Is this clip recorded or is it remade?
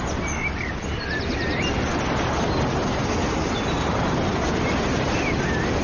recorded